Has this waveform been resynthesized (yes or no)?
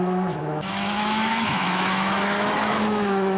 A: yes